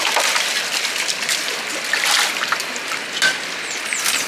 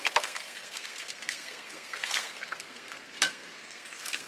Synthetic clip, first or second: second